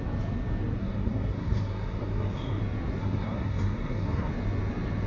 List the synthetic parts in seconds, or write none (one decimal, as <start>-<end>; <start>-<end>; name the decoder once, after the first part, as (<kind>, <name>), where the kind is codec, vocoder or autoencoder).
0.8-2.6 (codec, SNAC); 3.0-4.3